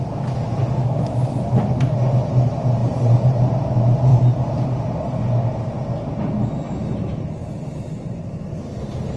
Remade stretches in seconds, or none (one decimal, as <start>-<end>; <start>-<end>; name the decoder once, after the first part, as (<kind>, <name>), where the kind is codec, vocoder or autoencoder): 2.8-3.6 (vocoder, BigVGAN v2); 7.4-8.2